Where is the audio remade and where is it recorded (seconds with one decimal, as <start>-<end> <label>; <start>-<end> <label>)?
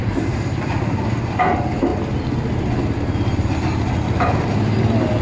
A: 0.0-5.2 recorded